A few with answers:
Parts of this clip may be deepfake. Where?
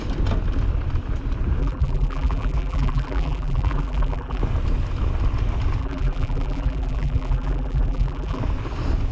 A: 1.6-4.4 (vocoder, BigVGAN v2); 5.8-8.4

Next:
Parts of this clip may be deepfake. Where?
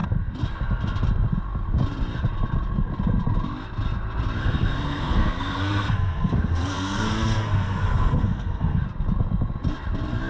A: 4.4-8.8 (codec, SNAC)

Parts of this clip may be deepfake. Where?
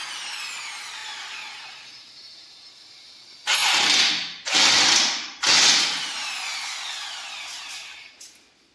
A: none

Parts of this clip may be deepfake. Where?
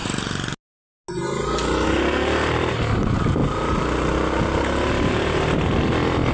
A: none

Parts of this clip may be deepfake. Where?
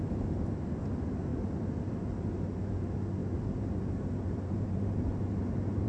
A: 3.2-5.9 (vocoder, BigVGAN v2)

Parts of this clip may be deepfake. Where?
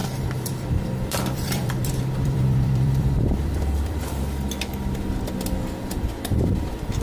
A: 0.0-4.2 (vocoder, BigVGAN v2)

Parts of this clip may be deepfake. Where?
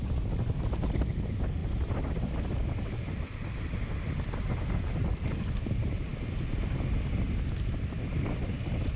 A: none